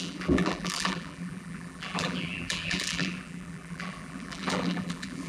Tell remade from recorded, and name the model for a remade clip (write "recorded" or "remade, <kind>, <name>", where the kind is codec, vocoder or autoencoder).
remade, vocoder, BigVGAN v2